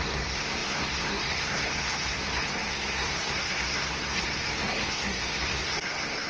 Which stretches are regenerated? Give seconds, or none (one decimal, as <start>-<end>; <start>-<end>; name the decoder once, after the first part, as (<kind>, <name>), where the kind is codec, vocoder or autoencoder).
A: 0.0-6.3 (codec, SNAC)